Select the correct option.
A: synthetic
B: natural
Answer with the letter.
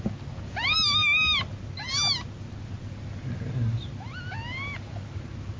B